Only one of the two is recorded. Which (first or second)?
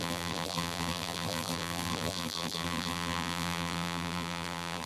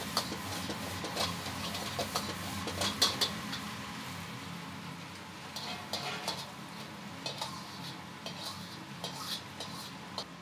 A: second